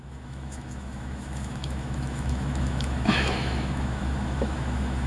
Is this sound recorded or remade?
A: remade